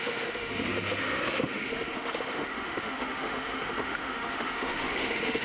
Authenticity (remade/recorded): remade